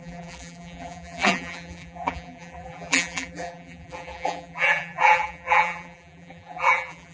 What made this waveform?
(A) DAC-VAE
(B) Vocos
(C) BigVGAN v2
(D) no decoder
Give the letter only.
C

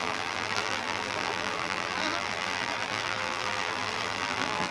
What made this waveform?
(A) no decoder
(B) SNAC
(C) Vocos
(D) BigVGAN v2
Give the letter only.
D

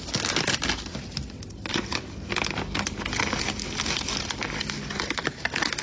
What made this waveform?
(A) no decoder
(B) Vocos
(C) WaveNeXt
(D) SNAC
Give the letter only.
A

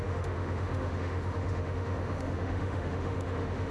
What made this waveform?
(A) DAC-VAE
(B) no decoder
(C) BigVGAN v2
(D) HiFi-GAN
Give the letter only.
A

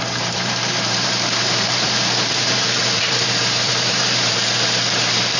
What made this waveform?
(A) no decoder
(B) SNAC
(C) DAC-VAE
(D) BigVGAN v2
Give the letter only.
D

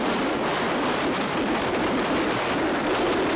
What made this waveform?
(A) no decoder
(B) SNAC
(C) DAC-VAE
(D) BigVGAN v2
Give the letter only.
A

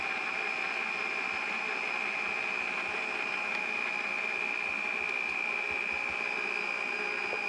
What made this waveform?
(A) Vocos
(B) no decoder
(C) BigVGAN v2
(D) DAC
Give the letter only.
C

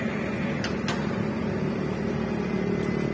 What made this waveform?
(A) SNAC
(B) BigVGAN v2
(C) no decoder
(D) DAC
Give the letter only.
C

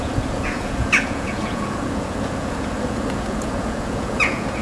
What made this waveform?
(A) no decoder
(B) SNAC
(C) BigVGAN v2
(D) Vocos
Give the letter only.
D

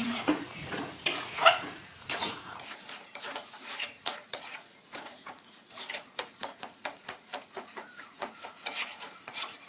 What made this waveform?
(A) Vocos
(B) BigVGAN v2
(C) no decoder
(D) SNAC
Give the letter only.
A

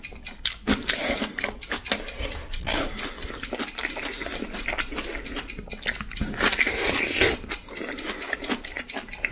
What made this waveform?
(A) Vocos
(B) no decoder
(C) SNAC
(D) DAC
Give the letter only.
B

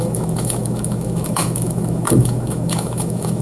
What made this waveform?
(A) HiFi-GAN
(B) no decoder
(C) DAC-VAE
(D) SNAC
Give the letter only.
C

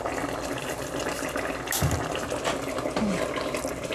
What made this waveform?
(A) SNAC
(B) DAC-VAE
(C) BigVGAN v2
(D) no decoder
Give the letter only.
D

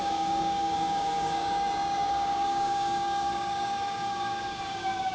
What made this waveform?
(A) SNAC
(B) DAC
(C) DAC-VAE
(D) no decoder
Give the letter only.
B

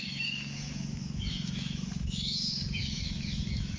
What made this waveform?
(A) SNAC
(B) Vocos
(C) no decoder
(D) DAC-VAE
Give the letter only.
D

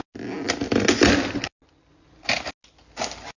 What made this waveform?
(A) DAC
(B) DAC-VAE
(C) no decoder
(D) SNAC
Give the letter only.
C